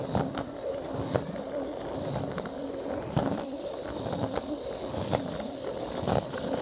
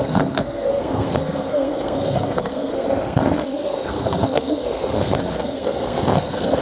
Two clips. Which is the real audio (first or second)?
first